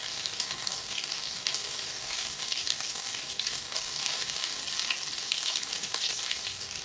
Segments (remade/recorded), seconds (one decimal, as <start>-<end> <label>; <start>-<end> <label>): 0.0-4.6 remade; 4.6-5.2 recorded; 5.2-6.8 remade